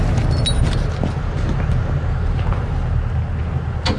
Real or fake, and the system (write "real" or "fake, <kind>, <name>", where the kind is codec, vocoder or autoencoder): real